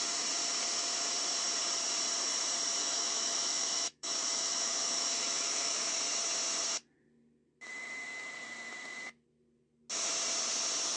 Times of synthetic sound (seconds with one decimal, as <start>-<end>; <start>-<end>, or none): 2.8-6.0